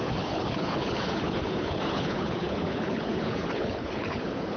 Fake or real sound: fake